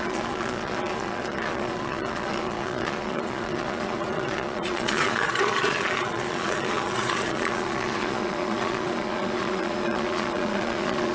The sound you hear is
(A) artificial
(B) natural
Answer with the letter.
A